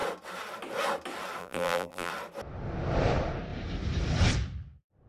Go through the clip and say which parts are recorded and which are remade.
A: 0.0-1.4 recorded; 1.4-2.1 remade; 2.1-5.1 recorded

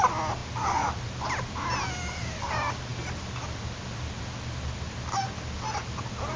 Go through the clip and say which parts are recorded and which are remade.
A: 0.0-6.4 recorded

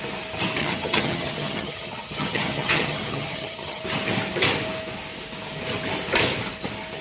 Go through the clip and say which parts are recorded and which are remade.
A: 0.0-0.6 recorded; 0.6-3.8 remade; 3.8-7.0 recorded

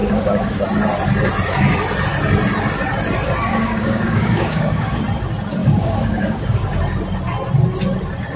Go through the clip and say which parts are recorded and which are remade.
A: 0.0-0.6 remade; 0.6-3.5 recorded; 3.5-5.0 remade; 5.0-5.6 recorded; 5.6-6.8 remade; 6.8-8.4 recorded

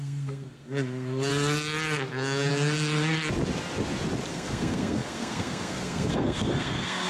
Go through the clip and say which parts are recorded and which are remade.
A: 0.0-1.3 remade; 1.3-2.1 recorded; 2.1-2.5 remade; 2.5-4.3 recorded; 4.3-7.1 remade